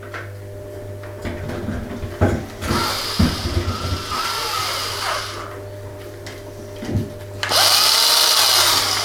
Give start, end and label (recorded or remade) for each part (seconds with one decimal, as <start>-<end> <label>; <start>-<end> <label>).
0.0-9.0 recorded